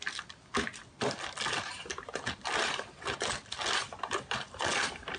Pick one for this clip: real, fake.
real